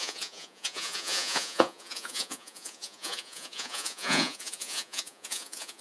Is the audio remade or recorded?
remade